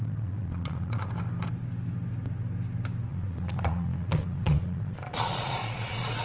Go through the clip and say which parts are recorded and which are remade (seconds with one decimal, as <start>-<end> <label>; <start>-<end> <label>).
0.0-1.1 remade; 1.1-3.1 recorded; 3.1-6.2 remade